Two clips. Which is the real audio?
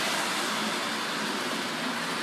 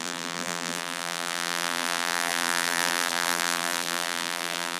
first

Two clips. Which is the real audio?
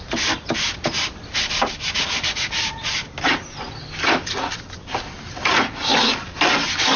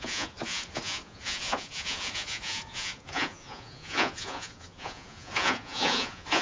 first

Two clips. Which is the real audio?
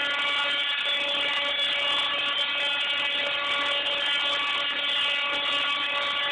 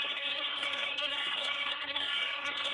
first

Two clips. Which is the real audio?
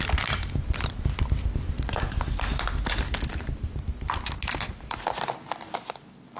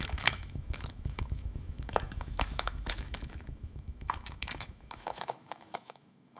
first